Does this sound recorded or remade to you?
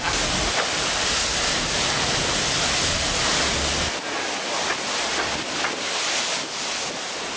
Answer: recorded